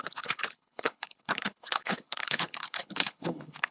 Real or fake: fake